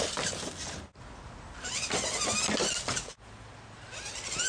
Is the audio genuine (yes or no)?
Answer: yes